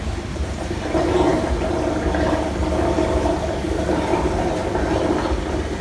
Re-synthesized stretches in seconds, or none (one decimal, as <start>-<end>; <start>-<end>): none